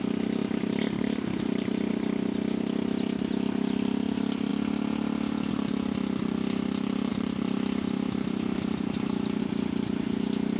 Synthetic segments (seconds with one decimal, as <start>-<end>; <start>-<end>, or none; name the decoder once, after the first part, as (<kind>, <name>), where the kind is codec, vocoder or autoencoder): 0.4-1.9 (vocoder, BigVGAN v2); 7.1-9.4

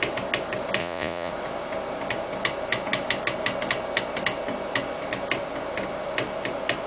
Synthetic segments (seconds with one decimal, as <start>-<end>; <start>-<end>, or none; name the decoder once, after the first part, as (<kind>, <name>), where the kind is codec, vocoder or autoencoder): 0.8-1.3 (vocoder, Vocos)

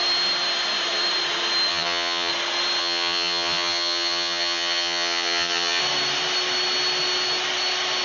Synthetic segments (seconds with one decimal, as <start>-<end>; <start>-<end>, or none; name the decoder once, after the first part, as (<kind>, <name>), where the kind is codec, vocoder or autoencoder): 1.7-2.3 (vocoder, HiFi-GAN); 2.8-5.8

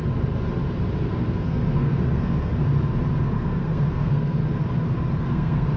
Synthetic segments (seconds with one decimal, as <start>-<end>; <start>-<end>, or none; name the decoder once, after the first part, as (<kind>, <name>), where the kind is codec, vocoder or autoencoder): 1.0-2.5 (codec, SNAC); 3.2-4.4; 5.2-5.8

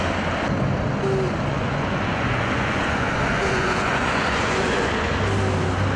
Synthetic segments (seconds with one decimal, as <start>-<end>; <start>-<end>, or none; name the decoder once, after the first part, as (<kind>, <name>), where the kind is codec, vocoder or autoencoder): 1.5-5.1 (vocoder, Vocos)

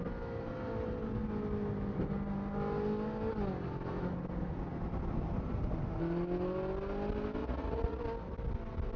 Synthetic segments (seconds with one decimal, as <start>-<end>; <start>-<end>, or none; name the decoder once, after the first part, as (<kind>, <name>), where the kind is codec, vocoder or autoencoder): 7.4-8.0 (vocoder, Vocos)

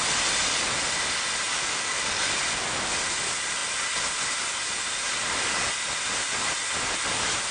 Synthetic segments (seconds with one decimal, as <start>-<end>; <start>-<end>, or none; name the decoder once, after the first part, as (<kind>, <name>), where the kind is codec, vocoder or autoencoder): 1.5-2.3 (codec, DAC)